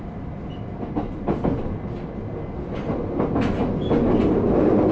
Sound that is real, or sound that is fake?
real